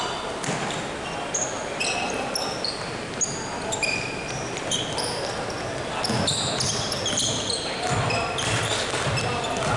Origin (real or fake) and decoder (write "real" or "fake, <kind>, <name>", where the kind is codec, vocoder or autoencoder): real